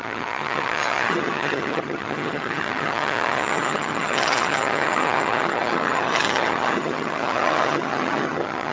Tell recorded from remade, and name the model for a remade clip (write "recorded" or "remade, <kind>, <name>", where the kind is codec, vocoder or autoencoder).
remade, vocoder, HiFi-GAN